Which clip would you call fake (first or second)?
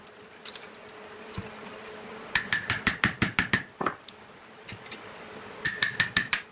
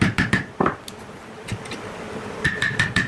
second